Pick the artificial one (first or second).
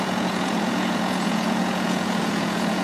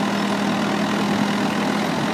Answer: first